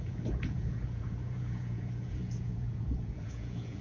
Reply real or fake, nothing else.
fake